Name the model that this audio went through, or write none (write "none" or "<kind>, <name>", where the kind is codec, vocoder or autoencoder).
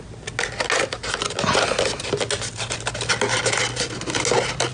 none